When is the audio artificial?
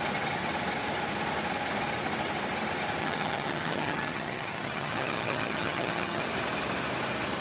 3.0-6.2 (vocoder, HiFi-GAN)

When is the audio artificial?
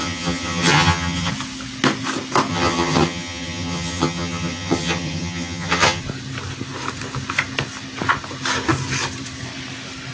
0.0-1.3 (vocoder, HiFi-GAN); 2.5-6.0